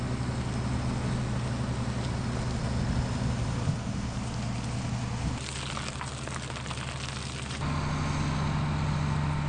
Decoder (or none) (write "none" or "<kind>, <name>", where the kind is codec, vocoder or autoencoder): none